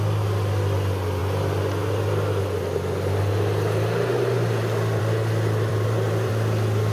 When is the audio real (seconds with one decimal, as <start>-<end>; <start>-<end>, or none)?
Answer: 0.0-5.7; 6.3-6.9